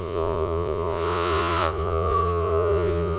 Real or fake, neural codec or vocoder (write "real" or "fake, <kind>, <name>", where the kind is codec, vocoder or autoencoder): fake, vocoder, Vocos